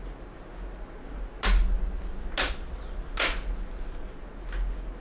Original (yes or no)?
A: yes